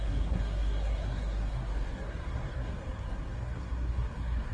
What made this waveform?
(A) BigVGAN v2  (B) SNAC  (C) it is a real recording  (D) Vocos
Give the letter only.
B